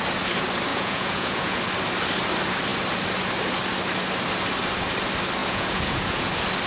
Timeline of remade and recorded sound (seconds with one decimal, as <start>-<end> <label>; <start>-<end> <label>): 0.0-0.7 recorded; 0.7-1.6 remade; 1.6-5.4 recorded; 5.4-6.3 remade; 6.3-6.7 recorded